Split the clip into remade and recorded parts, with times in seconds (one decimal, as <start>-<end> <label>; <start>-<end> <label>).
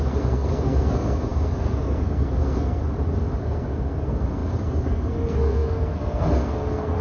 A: 0.0-2.8 remade; 2.8-3.4 recorded; 3.4-7.0 remade